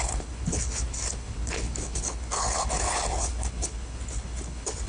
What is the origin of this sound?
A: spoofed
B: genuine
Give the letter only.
A